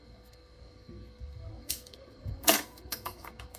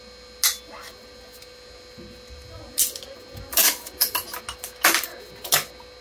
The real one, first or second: second